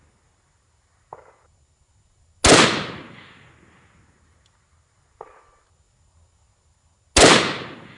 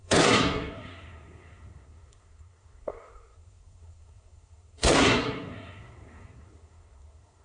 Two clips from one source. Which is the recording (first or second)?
first